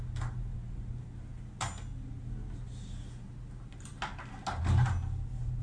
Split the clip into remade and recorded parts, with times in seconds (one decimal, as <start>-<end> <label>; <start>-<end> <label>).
0.0-5.6 recorded